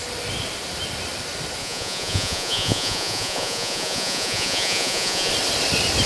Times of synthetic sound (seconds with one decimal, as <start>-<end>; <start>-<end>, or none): 1.6-5.3